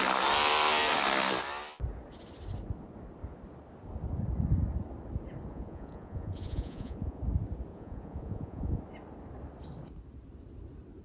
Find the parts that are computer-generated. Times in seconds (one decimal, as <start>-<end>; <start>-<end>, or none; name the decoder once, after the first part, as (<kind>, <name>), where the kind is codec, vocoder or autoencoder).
5.5-7.2 (vocoder, Vocos); 7.7-8.8